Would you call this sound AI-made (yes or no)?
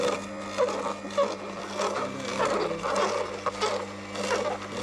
no